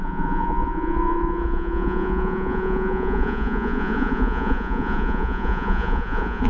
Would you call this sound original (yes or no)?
no